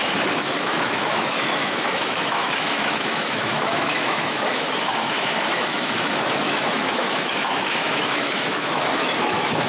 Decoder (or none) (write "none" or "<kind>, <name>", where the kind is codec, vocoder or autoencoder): autoencoder, DAC-VAE